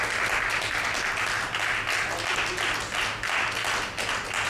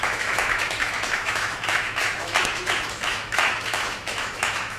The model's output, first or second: second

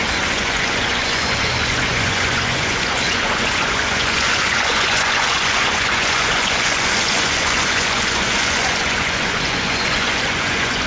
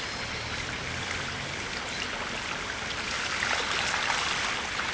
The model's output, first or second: first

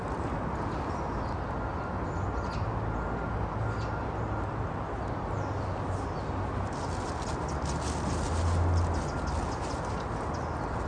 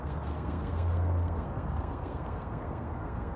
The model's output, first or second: second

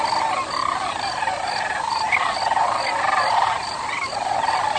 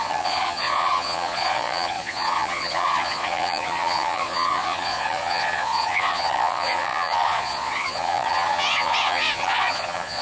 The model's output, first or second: second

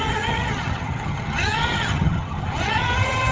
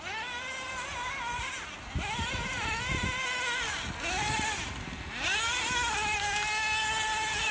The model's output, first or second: first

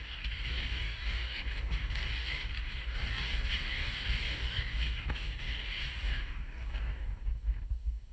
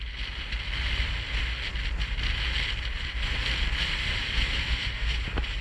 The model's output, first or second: first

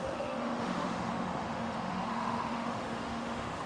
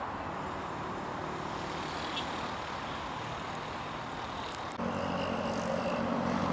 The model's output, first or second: first